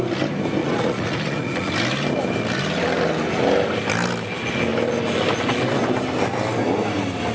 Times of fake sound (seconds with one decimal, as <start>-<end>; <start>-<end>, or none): 0.6-1.7